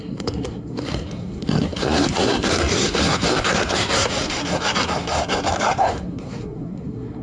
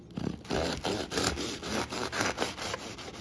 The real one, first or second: second